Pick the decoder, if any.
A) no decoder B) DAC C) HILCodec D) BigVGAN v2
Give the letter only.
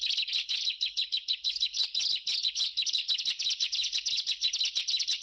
C